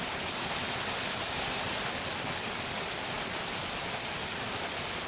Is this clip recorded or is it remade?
recorded